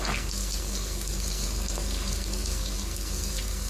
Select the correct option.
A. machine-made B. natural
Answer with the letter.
A